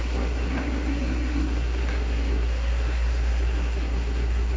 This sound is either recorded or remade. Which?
remade